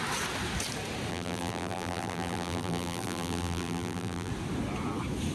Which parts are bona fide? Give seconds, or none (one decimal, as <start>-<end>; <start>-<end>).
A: 0.0-1.1; 4.3-5.3